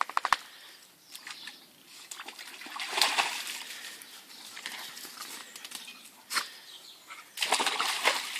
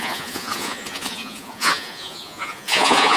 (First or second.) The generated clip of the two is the second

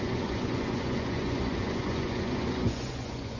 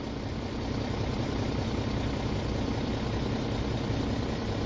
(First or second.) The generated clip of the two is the first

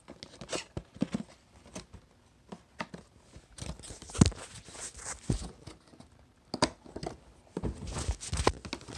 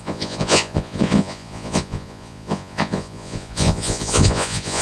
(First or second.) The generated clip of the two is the second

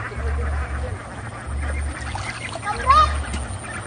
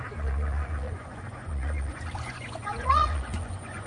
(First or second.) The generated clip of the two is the second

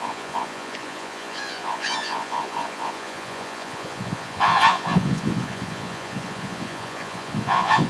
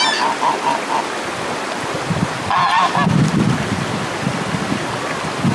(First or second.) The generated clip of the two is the first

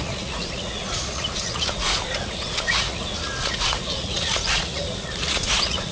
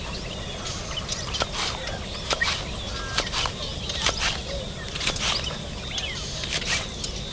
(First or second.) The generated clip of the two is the first